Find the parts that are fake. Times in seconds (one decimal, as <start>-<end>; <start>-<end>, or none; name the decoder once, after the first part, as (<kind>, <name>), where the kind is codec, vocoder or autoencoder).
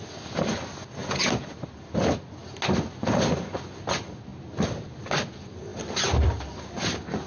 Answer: 5.7-6.6 (vocoder, BigVGAN v2)